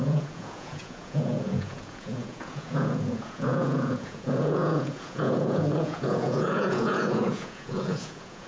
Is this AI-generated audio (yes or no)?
yes